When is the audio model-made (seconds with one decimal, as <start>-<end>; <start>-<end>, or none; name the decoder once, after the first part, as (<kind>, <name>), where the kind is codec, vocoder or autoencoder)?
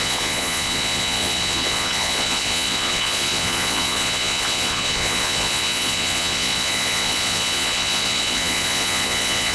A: 0.0-9.5 (vocoder, Vocos)